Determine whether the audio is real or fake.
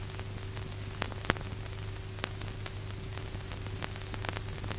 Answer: real